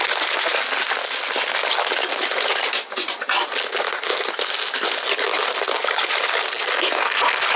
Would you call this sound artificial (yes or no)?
no